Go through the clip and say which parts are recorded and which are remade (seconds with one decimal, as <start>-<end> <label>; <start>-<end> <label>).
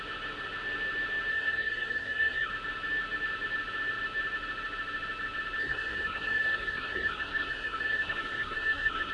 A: 0.0-1.3 recorded; 1.3-2.5 remade; 2.5-5.6 recorded; 5.6-9.1 remade